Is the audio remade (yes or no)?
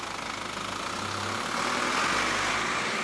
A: no